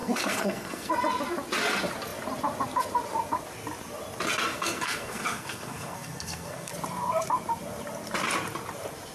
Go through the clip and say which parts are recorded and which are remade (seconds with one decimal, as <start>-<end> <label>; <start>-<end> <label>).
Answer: 0.0-0.9 remade; 0.9-4.5 recorded; 4.5-6.7 remade; 6.7-9.1 recorded